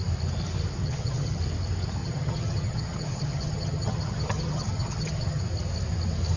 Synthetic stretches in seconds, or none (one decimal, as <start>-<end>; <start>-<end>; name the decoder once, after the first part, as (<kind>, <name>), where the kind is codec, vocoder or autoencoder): 0.8-1.4 (vocoder, HiFi-GAN); 2.0-5.4

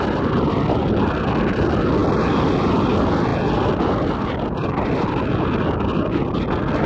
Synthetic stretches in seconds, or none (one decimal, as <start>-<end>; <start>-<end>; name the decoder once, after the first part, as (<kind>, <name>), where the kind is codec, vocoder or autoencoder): none

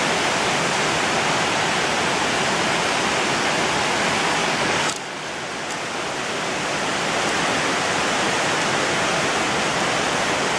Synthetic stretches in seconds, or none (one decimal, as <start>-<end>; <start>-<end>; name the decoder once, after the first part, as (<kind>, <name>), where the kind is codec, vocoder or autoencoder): 4.4-5.3 (codec, DAC)

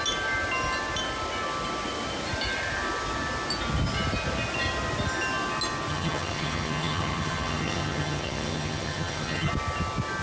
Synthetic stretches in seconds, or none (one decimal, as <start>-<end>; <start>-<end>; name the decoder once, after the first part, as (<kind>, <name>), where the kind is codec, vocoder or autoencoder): 5.9-9.5 (vocoder, HiFi-GAN)

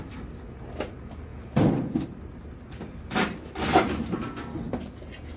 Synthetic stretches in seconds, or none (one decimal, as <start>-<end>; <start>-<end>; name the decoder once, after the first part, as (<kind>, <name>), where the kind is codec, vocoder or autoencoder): none

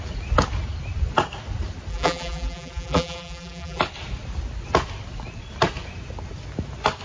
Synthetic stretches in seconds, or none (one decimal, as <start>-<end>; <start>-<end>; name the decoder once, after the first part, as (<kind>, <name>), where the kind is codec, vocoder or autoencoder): 1.9-3.8 (vocoder, BigVGAN v2)

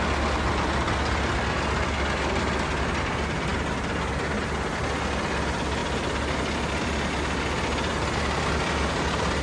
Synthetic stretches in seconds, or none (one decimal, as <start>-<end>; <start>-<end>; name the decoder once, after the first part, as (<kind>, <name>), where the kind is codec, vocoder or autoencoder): none